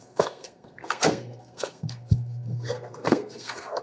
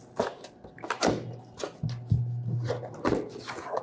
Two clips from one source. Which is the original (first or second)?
second